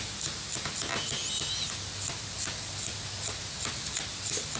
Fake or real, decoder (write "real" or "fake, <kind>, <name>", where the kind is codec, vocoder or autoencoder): real